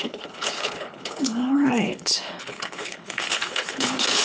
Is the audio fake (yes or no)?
yes